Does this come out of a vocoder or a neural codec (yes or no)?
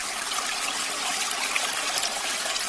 no